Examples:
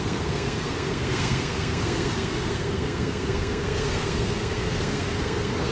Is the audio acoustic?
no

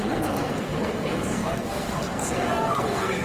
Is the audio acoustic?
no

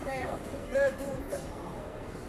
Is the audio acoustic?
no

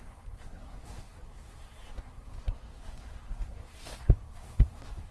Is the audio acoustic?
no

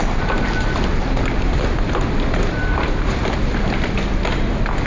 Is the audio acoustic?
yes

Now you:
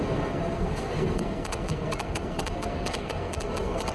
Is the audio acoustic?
no